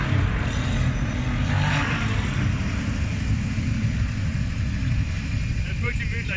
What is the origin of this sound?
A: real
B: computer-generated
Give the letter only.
A